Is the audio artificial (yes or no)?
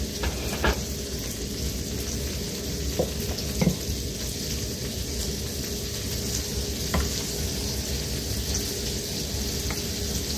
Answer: no